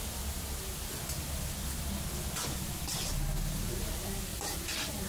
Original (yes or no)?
yes